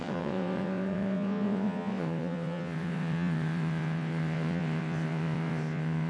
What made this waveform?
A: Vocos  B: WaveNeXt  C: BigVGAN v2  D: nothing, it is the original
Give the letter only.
B